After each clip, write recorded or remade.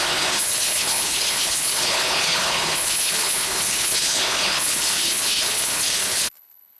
remade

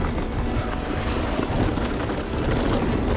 recorded